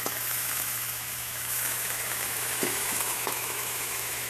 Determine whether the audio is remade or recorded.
remade